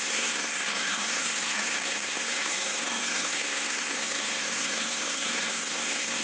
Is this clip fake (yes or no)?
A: yes